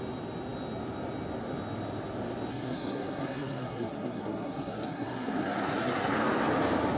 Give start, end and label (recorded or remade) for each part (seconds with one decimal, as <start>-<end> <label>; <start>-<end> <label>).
0.0-2.5 recorded; 2.5-6.1 remade; 6.1-7.0 recorded

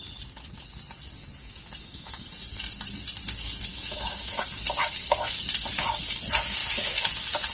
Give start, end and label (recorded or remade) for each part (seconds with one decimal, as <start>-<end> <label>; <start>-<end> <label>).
0.0-1.4 recorded; 1.4-2.3 remade; 2.3-3.7 recorded; 3.7-4.3 remade; 4.3-7.5 recorded

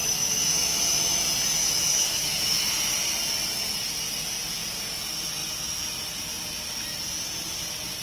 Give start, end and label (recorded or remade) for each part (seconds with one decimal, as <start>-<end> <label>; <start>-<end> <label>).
0.0-1.2 remade; 1.2-1.6 recorded; 1.6-2.7 remade; 2.7-8.0 recorded